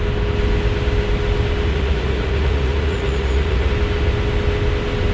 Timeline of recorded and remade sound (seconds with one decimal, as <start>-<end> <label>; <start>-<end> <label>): 0.0-1.7 recorded; 1.7-3.7 remade; 3.7-5.1 recorded